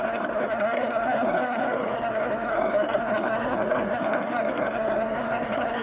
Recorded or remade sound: remade